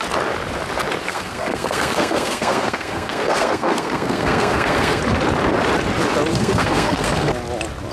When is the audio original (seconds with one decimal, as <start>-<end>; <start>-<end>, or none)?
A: 0.0-1.1; 5.0-6.3; 7.3-7.9